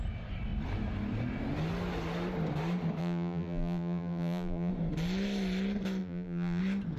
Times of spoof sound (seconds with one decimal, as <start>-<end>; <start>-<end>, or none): 3.0-4.7; 6.0-6.6